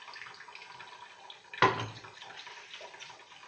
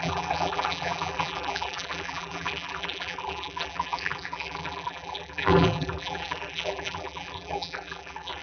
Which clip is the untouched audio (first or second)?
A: first